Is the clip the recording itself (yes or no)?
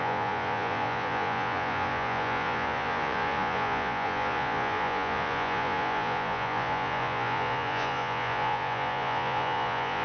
no